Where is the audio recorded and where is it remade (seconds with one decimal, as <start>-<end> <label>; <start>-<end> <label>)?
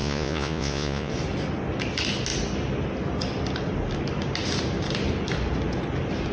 0.0-1.1 remade; 1.1-6.3 recorded